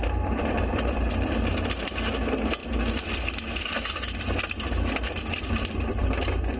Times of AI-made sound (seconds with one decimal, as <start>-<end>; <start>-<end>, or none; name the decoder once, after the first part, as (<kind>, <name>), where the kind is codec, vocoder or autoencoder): 0.0-1.5 (vocoder, BigVGAN v2); 2.6-6.0